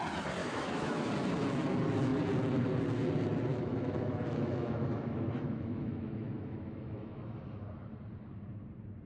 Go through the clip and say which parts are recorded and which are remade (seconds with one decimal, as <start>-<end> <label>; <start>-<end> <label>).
0.0-0.4 recorded; 0.4-1.1 remade; 1.1-3.5 recorded; 3.5-7.4 remade; 7.4-9.1 recorded